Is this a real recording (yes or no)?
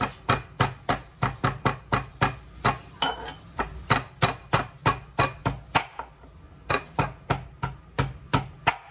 yes